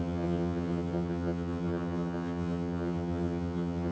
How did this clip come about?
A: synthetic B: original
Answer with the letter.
A